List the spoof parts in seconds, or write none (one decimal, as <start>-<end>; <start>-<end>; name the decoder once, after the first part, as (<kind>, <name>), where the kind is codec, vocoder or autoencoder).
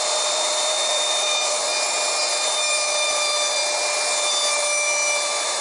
0.0-1.7 (vocoder, BigVGAN v2); 2.3-3.6; 4.3-5.6